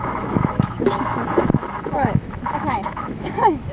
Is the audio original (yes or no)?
no